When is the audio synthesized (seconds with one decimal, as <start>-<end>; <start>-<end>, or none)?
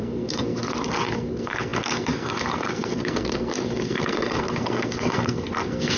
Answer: 0.0-6.0